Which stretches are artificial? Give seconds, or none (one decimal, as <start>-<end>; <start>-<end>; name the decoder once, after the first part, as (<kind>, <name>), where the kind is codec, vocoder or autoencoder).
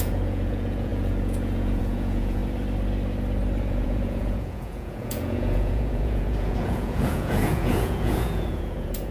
0.0-2.4 (vocoder, Vocos); 3.7-9.1